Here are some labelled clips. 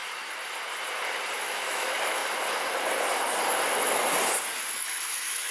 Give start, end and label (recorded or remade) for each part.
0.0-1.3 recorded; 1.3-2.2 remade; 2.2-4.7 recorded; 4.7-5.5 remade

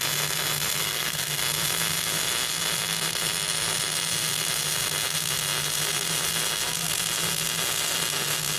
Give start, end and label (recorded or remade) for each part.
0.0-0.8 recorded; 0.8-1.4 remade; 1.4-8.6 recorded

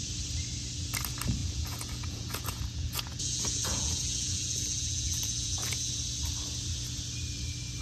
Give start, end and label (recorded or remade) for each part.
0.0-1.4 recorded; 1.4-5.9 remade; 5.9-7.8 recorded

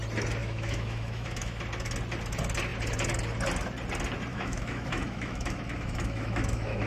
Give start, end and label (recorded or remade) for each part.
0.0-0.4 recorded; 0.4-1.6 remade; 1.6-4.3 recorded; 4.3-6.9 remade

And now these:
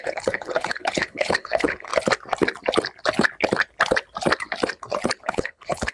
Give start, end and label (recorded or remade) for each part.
0.0-1.9 remade; 1.9-5.2 recorded; 5.2-5.9 remade

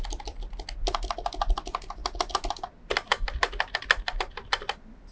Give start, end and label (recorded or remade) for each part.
0.0-5.1 recorded

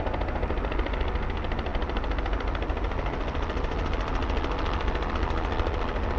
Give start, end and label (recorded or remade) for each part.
0.0-6.2 recorded

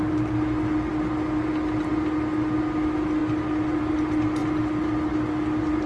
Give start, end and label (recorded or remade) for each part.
0.0-5.9 recorded